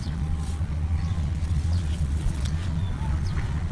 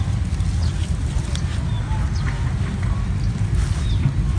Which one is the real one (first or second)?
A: second